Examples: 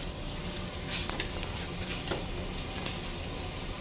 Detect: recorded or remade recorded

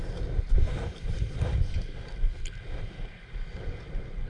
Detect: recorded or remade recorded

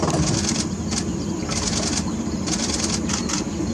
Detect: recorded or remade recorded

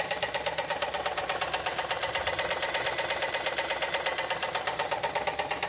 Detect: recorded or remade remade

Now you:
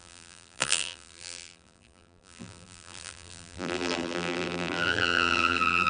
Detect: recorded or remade remade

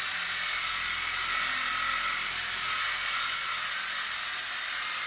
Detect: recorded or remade recorded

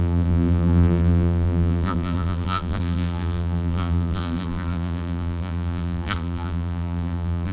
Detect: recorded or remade remade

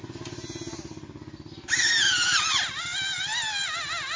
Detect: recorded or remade recorded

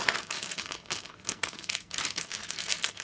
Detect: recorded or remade remade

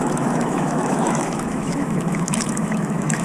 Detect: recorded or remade remade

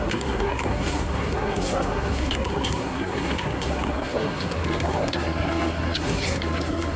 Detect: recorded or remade remade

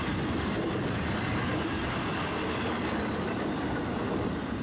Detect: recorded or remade recorded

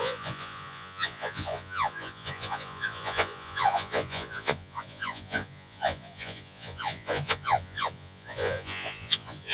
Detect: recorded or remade remade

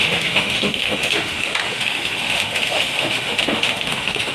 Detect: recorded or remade remade